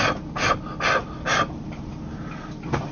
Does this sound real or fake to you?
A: real